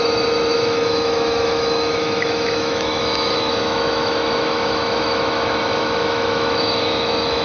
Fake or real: fake